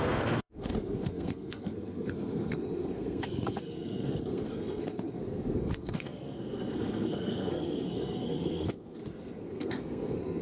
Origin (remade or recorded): remade